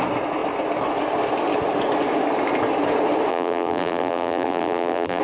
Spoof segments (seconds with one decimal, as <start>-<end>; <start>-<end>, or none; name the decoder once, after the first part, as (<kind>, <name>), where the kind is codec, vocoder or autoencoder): 3.3-5.2 (vocoder, BigVGAN v2)